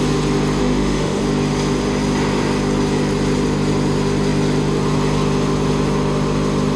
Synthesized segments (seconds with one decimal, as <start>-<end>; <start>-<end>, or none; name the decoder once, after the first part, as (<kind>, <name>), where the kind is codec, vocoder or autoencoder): 0.6-1.2 (autoencoder, DAC-VAE)